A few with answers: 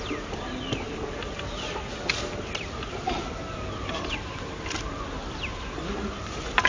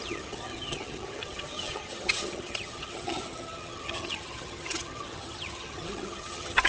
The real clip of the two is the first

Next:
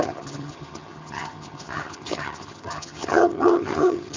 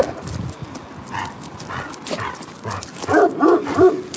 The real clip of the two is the second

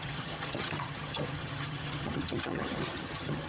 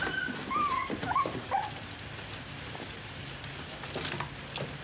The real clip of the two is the second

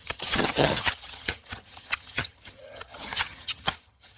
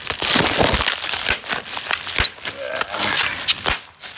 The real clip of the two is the second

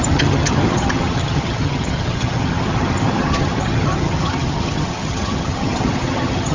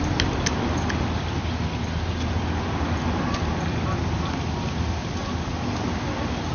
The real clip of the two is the second